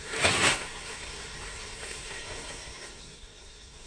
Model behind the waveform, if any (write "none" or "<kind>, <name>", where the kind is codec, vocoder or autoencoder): codec, SNAC